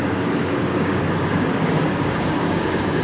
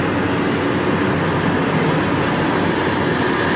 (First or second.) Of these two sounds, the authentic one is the second